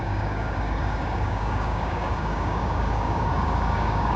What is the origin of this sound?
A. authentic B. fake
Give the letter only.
B